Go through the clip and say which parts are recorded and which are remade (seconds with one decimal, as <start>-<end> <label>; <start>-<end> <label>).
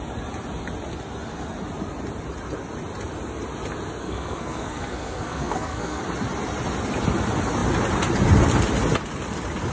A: 0.0-4.0 recorded; 4.0-6.0 remade; 6.0-9.7 recorded